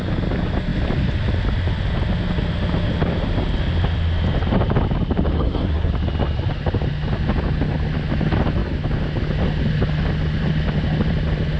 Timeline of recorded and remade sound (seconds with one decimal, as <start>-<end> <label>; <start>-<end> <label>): 0.0-5.3 recorded; 5.3-5.9 remade; 5.9-11.6 recorded